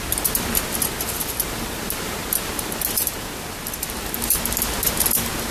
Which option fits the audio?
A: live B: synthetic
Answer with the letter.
A